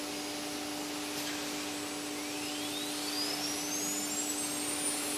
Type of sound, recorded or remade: recorded